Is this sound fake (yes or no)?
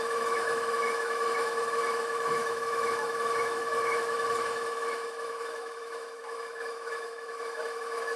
yes